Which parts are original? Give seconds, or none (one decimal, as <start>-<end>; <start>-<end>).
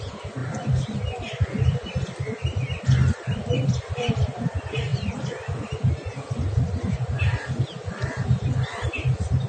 0.0-9.5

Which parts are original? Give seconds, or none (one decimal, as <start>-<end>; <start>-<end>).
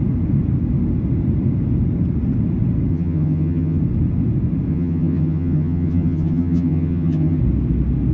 0.0-2.9; 3.8-4.7; 7.4-8.1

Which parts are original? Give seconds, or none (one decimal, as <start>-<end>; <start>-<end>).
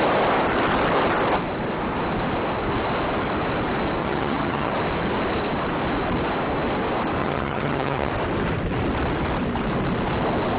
0.0-4.0; 4.7-7.2; 8.1-10.6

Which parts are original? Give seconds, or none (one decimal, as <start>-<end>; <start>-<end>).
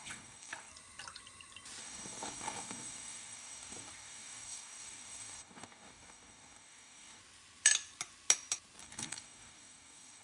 0.7-1.8; 7.2-8.8